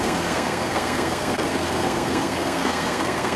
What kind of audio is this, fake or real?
fake